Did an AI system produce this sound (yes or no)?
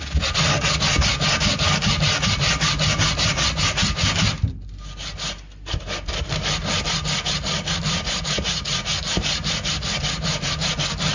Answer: no